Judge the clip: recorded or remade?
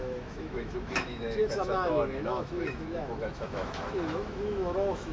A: remade